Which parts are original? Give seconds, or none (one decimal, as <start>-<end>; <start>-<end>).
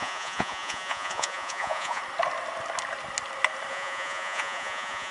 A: 2.0-3.7